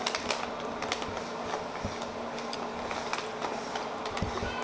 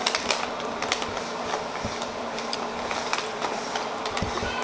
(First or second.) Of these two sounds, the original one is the first